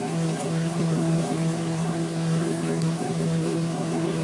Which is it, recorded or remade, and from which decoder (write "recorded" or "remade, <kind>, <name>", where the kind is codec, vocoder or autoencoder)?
remade, codec, SNAC